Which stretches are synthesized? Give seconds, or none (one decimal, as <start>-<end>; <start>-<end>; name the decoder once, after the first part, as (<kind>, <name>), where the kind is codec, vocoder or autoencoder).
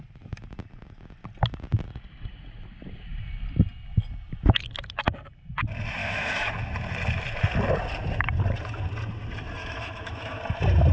6.0-6.5 (autoencoder, DAC-VAE); 9.6-10.4